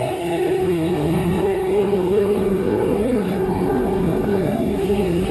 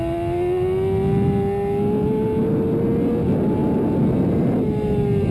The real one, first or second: second